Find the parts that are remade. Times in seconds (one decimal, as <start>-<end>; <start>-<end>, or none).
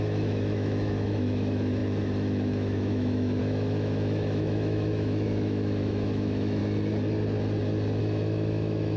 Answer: 0.0-6.6; 8.0-9.0